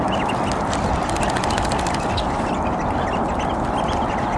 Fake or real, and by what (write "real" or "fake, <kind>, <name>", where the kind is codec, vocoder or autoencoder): real